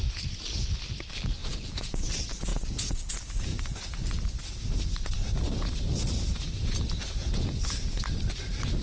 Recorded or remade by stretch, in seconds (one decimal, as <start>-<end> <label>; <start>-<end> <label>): 0.0-1.4 recorded; 1.4-2.0 remade; 2.0-2.5 recorded; 2.5-3.1 remade; 3.1-3.5 recorded; 3.5-4.0 remade; 4.0-7.2 recorded; 7.2-7.7 remade; 7.7-8.8 recorded